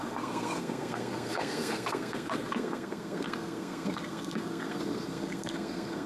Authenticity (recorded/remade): remade